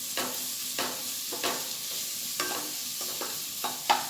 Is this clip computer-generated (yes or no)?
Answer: no